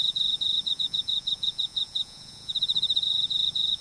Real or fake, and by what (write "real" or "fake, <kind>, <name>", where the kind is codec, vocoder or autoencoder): fake, vocoder, Vocos